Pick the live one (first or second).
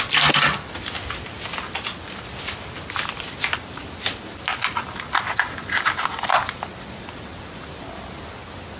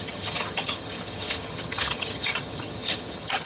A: first